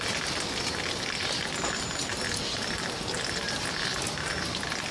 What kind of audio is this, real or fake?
real